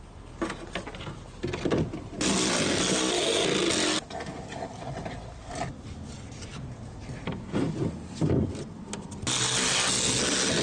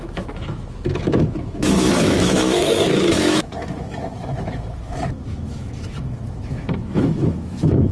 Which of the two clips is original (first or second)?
first